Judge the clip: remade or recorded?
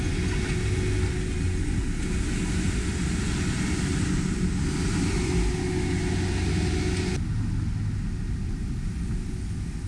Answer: recorded